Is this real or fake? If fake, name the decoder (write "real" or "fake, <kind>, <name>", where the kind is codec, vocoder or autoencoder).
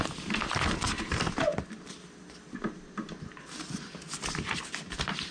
real